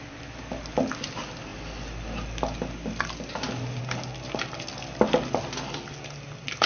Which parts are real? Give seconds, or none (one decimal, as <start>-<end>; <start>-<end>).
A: 0.0-6.7